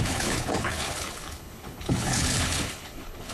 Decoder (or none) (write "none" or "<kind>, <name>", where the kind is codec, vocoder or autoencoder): codec, HILCodec